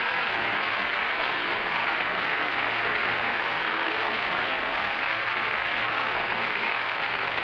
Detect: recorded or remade remade